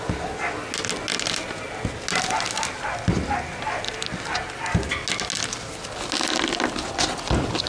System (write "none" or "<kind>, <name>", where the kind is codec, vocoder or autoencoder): none